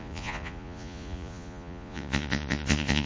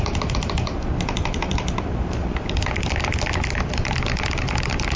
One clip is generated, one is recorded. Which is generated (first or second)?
first